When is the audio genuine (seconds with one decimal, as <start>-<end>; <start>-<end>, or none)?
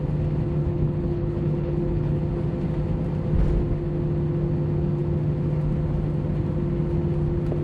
0.0-0.6; 2.2-7.6